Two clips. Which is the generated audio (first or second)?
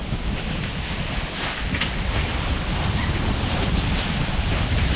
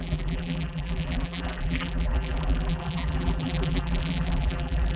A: second